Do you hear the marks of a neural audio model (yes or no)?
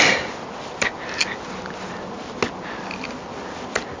no